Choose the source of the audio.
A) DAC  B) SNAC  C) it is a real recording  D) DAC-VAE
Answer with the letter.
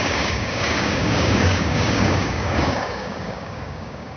A